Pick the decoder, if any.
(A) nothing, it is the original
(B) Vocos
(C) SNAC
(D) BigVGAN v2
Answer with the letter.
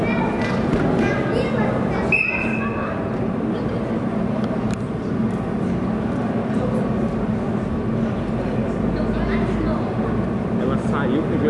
A